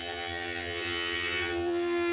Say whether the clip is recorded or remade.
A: remade